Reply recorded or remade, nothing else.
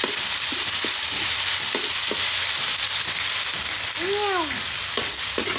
recorded